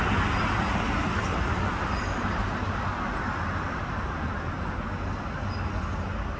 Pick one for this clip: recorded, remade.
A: recorded